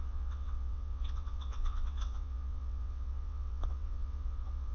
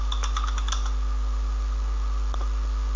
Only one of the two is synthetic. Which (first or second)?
first